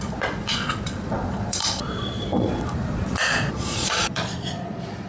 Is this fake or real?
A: fake